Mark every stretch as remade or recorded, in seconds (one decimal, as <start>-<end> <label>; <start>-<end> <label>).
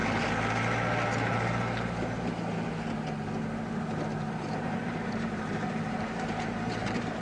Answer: 0.0-4.3 recorded; 4.3-7.2 remade